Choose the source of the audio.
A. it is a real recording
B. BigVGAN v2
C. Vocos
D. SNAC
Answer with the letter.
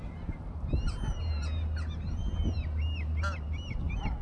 B